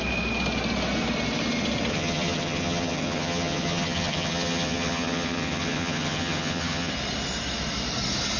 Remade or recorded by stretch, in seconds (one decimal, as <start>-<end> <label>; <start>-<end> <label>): 0.0-1.9 recorded; 1.9-6.9 remade; 6.9-8.4 recorded